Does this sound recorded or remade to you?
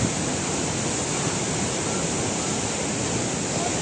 recorded